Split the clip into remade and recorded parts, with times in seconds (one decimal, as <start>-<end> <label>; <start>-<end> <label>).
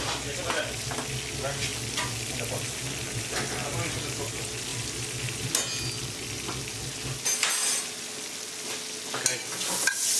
0.0-10.2 recorded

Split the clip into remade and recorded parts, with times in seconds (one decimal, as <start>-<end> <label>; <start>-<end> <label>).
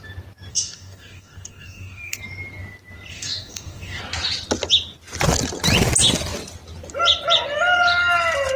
0.0-0.5 recorded; 0.5-2.2 remade; 2.2-3.1 recorded; 3.1-4.0 remade; 4.0-8.6 recorded